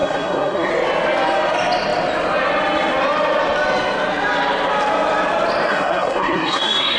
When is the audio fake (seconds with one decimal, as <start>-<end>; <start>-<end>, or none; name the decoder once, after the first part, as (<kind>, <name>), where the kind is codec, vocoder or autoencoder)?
0.0-0.7 (codec, SNAC); 5.7-7.0